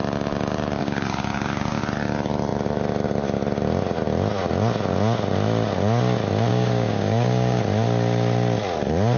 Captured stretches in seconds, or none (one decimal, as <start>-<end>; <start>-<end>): 0.0-0.8; 1.8-6.5; 7.6-9.2